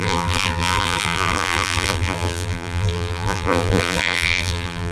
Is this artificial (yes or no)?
yes